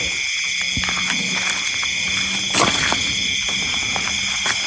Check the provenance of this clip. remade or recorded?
recorded